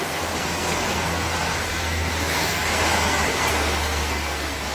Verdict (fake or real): fake